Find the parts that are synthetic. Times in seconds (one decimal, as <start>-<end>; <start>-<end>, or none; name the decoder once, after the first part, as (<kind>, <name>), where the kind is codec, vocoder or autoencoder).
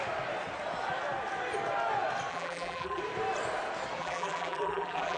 2.3-3.0 (vocoder, BigVGAN v2); 4.0-5.2